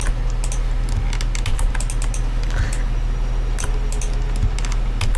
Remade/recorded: recorded